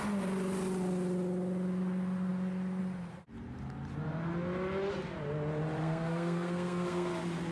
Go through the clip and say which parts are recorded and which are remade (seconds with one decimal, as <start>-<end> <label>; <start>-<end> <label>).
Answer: 0.0-5.8 recorded; 5.8-7.1 remade; 7.1-7.5 recorded